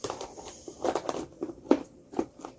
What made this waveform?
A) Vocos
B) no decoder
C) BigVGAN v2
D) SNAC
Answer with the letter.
C